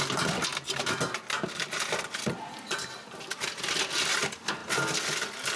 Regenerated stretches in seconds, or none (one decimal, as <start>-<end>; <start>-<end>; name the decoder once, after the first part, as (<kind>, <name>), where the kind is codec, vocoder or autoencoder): none

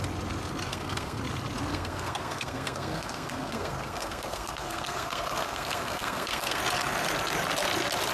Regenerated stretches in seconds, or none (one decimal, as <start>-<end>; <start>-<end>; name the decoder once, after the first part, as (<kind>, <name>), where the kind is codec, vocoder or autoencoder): 0.7-1.2 (codec, SNAC); 1.7-6.6

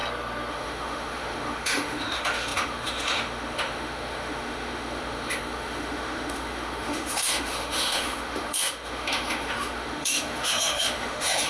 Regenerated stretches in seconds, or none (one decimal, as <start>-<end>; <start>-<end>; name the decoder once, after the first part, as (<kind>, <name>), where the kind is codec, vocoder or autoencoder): 0.5-11.5 (autoencoder, DAC-VAE)

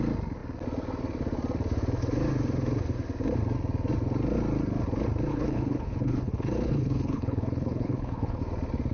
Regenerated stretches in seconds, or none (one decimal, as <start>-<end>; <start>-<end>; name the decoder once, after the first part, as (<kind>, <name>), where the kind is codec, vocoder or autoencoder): 5.3-8.4 (codec, HILCodec)

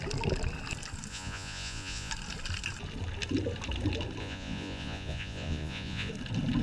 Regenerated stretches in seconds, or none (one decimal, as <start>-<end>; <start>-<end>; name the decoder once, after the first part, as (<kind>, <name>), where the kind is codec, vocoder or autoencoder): 1.1-2.1 (vocoder, Vocos); 4.2-6.1

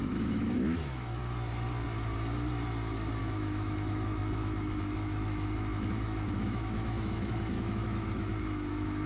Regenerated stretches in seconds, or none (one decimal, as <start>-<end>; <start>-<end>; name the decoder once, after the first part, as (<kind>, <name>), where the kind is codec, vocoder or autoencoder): 0.0-1.2 (autoencoder, DAC-VAE); 3.2-9.1